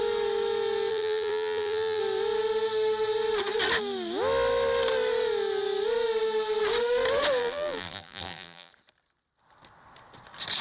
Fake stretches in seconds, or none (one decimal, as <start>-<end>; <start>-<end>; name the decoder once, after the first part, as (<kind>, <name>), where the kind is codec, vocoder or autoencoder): 0.9-2.0 (vocoder, BigVGAN v2); 7.4-8.7